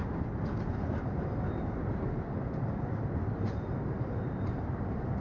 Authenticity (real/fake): real